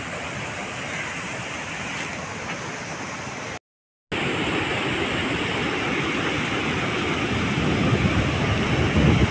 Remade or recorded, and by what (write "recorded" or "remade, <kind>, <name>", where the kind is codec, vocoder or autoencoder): recorded